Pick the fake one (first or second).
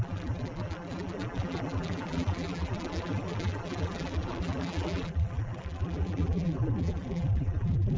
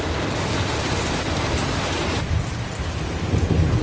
first